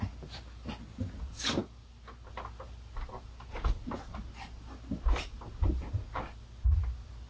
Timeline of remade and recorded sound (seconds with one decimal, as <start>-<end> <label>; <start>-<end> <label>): 0.0-7.3 recorded